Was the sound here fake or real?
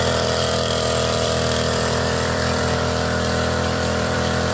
fake